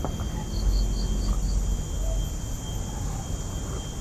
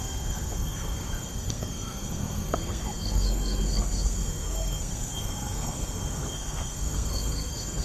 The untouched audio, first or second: first